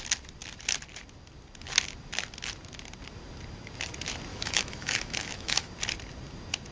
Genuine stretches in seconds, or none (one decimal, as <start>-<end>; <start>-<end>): 0.0-4.3; 5.7-6.7